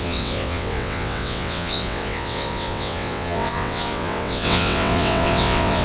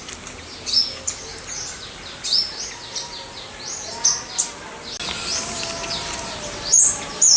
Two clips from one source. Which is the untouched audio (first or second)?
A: second